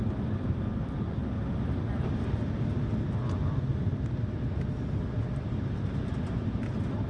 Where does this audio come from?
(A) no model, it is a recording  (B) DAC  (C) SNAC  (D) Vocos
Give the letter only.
A